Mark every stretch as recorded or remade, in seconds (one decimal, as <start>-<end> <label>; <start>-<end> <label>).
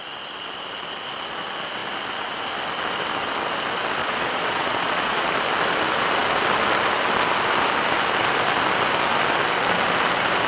0.0-4.0 recorded; 4.0-5.3 remade; 5.3-10.5 recorded